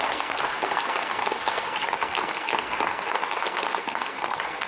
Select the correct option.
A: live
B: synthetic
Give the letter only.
B